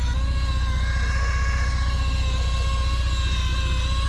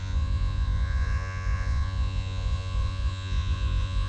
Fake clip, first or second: second